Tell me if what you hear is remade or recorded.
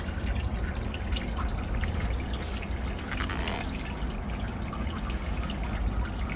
recorded